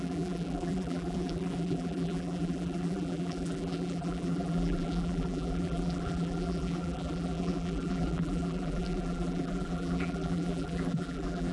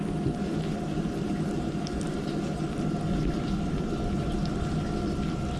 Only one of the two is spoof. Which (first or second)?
first